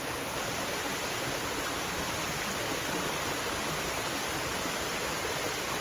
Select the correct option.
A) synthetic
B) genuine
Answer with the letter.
B